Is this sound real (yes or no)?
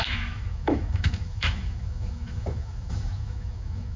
no